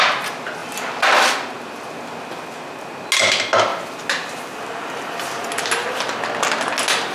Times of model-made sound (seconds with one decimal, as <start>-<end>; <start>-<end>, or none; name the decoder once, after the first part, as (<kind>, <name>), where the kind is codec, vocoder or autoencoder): none